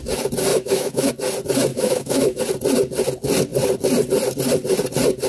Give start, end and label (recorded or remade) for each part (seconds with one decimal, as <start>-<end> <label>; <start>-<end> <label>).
0.0-0.5 recorded; 0.5-1.1 remade; 1.1-1.7 recorded; 1.7-2.4 remade; 2.4-5.3 recorded